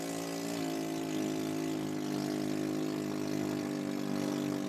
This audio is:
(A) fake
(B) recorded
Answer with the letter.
B